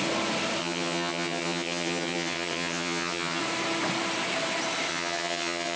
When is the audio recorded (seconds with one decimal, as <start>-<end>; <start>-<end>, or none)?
0.0-0.6; 3.4-4.9